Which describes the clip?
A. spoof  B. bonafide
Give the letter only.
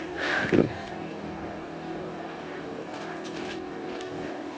A